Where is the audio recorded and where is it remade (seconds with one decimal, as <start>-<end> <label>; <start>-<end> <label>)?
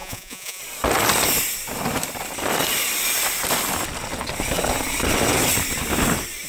0.0-0.6 remade; 0.6-6.5 recorded